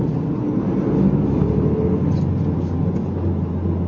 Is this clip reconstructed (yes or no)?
no